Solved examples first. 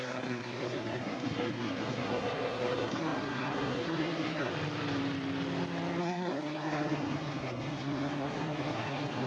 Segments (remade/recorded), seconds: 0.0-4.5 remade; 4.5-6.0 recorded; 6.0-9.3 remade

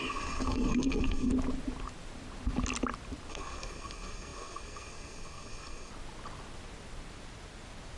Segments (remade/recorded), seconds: 0.0-1.3 remade; 1.3-3.3 recorded; 3.3-5.9 remade; 5.9-8.0 recorded

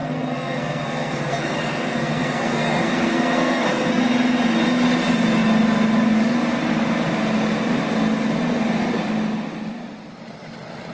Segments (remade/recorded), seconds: 0.0-4.0 remade; 4.0-10.9 recorded

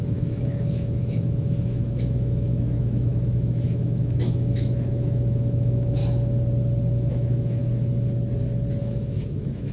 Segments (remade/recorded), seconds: 0.0-6.0 remade; 6.0-7.1 recorded; 7.1-7.6 remade; 7.6-8.8 recorded; 8.8-9.7 remade

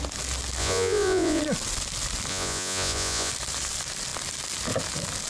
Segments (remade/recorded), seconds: 0.0-0.6 recorded; 0.6-1.4 remade; 1.4-2.3 recorded; 2.3-3.3 remade; 3.3-5.3 recorded

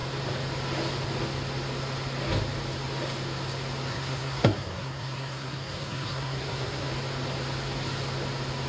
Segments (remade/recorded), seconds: 0.0-3.9 recorded; 3.9-6.9 remade; 6.9-8.7 recorded

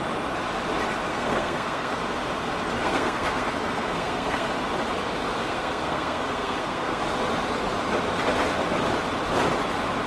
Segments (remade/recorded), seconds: 0.0-1.1 recorded; 1.1-2.0 remade; 2.0-2.8 recorded; 2.8-4.5 remade; 4.5-5.4 recorded; 5.4-7.0 remade; 7.0-10.1 recorded

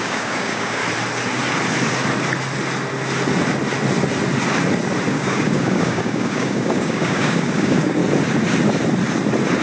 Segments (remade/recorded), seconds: 0.0-0.8 remade; 0.8-5.1 recorded; 5.1-8.0 remade; 8.0-9.6 recorded